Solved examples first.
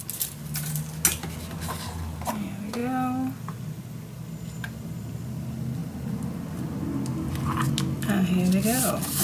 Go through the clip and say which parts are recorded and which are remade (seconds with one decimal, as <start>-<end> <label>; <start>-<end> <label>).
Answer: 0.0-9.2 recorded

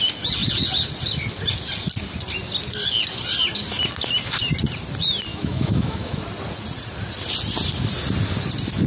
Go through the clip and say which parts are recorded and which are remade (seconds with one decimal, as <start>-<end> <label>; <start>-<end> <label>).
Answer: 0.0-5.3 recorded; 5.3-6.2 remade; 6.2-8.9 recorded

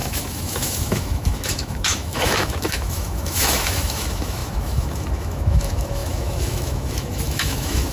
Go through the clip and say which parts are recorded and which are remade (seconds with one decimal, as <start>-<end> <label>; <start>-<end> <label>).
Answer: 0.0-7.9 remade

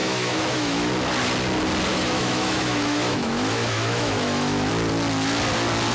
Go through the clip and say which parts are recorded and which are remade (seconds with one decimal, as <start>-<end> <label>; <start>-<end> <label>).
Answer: 0.0-0.9 remade; 0.9-1.9 recorded; 1.9-4.7 remade; 4.7-5.9 recorded

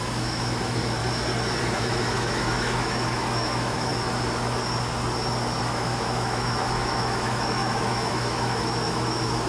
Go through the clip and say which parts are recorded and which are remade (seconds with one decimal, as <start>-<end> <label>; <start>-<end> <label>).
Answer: 0.0-1.0 remade; 1.0-1.6 recorded; 1.6-3.9 remade; 3.9-5.6 recorded; 5.6-9.5 remade

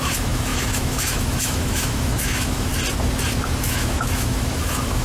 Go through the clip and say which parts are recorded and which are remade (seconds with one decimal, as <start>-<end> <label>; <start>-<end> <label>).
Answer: 0.0-2.7 remade; 2.7-3.6 recorded; 3.6-5.0 remade

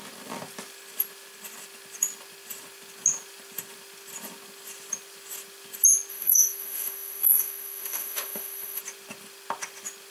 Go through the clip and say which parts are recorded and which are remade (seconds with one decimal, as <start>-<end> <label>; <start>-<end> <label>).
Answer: 0.0-6.1 recorded; 6.1-8.8 remade; 8.8-10.1 recorded